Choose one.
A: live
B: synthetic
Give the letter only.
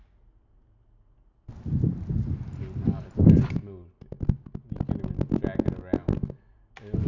A